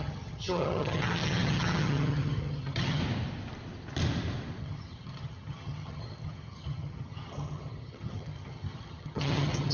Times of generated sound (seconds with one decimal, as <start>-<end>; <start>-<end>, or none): 0.0-3.0; 4.6-9.7